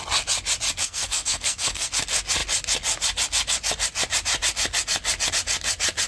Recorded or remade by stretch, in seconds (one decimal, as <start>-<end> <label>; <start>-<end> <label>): 0.0-0.8 recorded; 0.8-1.9 remade; 1.9-6.1 recorded